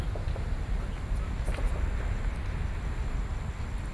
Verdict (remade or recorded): recorded